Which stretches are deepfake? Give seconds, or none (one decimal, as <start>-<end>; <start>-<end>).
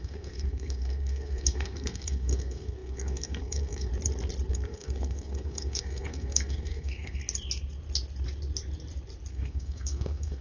0.0-3.9; 4.5-7.2; 9.3-10.4